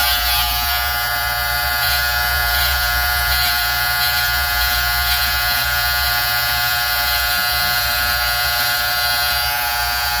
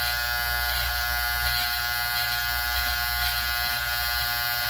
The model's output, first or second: first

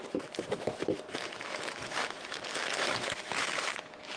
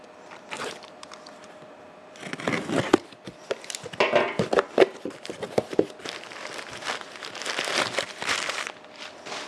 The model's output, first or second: first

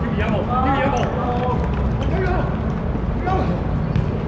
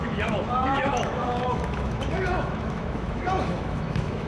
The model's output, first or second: second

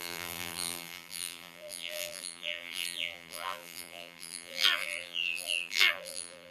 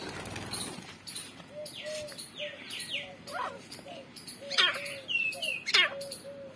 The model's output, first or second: first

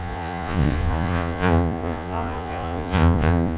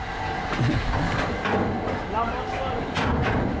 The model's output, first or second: first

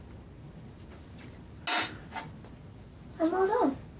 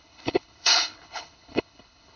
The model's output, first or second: second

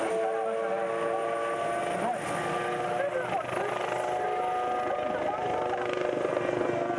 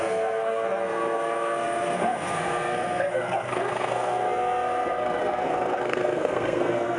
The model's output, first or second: second